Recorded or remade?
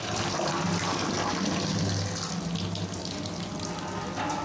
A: recorded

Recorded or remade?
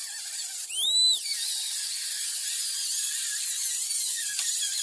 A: recorded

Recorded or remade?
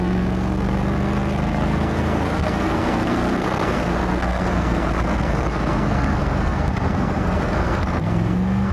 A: remade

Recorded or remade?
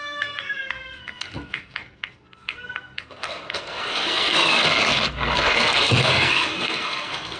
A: remade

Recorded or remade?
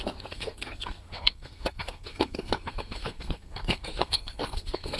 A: remade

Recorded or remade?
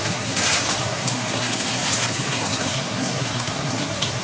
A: remade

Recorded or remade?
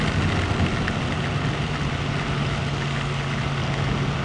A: recorded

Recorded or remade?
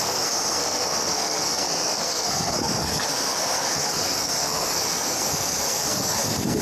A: remade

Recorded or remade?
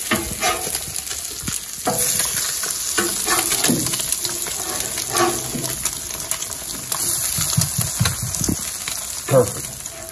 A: recorded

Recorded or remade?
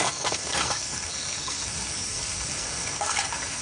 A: remade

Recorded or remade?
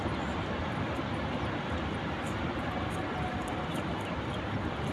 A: recorded